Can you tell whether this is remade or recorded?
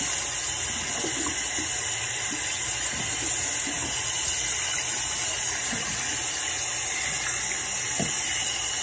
recorded